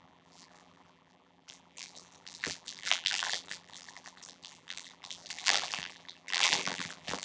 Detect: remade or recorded remade